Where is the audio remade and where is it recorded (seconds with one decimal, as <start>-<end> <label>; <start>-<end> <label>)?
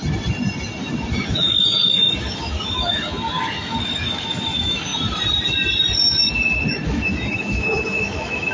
0.0-1.2 recorded; 1.2-4.9 remade; 4.9-6.7 recorded; 6.7-8.5 remade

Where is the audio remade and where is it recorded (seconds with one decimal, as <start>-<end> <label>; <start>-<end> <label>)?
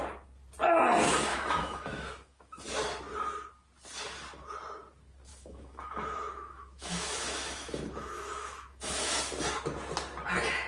0.0-1.3 recorded; 1.3-2.6 remade; 2.6-5.3 recorded; 5.3-9.2 remade; 9.2-10.7 recorded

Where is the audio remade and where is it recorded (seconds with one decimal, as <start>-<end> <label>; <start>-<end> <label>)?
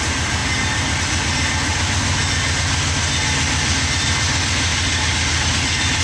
0.0-6.0 recorded